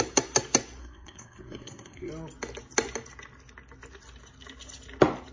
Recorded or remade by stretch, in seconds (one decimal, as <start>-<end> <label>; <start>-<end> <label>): 0.0-0.8 recorded; 0.8-2.1 remade; 2.1-5.3 recorded